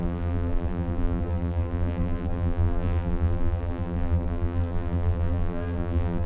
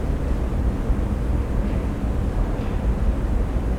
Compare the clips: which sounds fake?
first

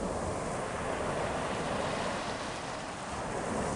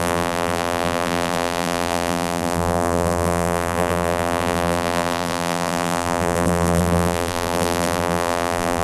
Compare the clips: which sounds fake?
second